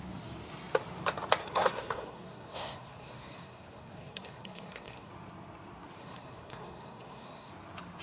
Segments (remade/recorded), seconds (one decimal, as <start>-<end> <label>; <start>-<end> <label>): 0.0-1.4 recorded; 1.4-5.1 remade; 5.1-6.0 recorded; 6.0-7.5 remade; 7.5-8.0 recorded